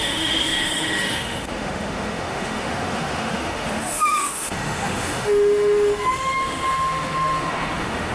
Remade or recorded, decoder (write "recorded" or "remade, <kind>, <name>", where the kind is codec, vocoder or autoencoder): remade, autoencoder, DAC-VAE